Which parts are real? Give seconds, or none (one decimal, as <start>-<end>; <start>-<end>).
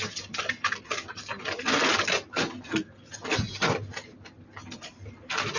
0.0-5.6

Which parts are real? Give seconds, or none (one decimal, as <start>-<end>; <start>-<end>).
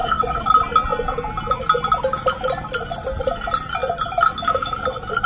0.5-5.3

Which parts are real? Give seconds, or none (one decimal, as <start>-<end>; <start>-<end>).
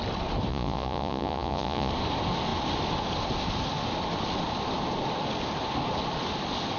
0.0-0.5; 1.9-6.8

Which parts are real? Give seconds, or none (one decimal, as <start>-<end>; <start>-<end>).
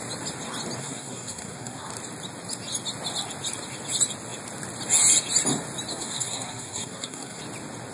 0.0-0.8; 1.9-5.9; 7.4-7.9